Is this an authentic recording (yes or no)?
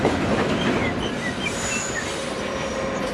yes